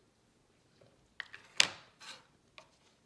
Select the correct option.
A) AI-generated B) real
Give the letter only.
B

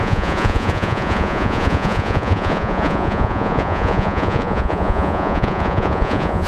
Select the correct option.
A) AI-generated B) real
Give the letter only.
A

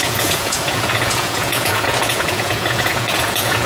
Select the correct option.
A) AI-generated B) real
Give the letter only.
A